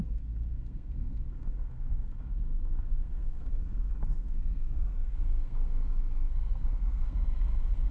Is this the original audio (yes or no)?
no